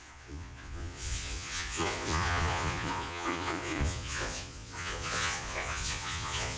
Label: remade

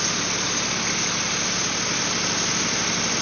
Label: recorded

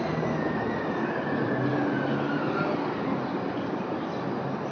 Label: recorded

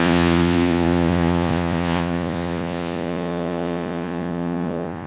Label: remade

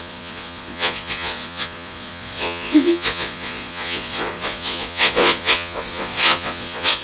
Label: remade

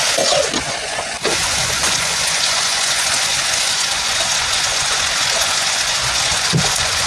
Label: remade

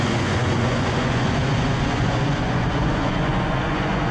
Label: remade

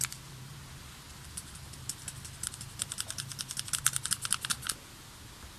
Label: recorded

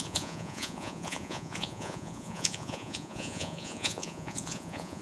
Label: remade